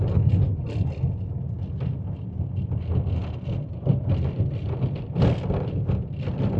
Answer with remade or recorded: recorded